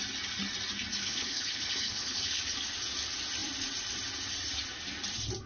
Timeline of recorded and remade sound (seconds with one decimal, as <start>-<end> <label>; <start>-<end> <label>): 0.0-1.0 recorded; 1.0-2.4 remade; 2.4-5.5 recorded